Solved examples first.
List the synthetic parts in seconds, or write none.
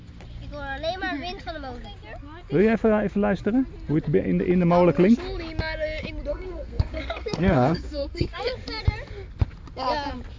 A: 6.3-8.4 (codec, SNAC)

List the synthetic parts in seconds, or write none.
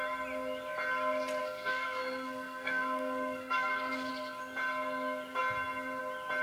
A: 1.4-4.1 (codec, SNAC)